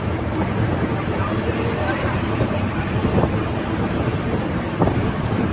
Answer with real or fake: fake